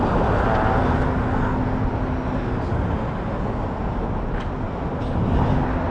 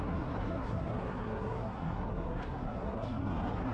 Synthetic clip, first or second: second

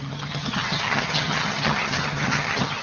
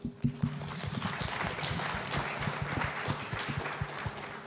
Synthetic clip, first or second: first